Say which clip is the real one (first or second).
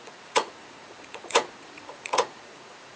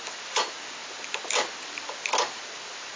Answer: second